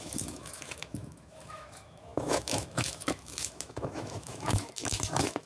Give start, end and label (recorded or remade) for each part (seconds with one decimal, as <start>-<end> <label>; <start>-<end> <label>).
0.0-5.5 remade